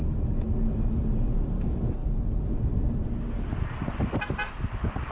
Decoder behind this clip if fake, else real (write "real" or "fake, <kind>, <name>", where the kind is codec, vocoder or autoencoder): real